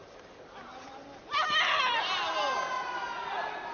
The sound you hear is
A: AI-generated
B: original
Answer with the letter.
B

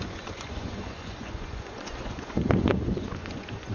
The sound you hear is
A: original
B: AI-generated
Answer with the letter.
B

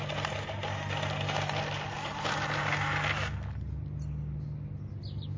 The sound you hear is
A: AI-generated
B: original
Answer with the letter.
B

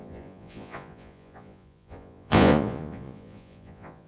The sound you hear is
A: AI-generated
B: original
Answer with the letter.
A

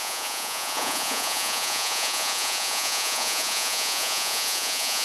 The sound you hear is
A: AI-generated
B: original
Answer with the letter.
A